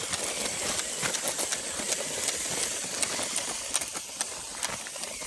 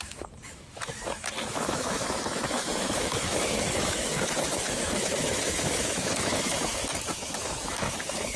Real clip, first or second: first